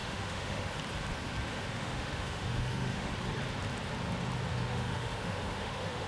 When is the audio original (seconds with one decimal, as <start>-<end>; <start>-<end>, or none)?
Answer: 0.7-1.5; 3.1-4.5